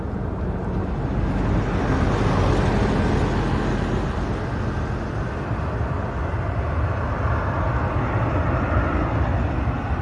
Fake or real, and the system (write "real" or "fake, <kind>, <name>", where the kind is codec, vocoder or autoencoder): real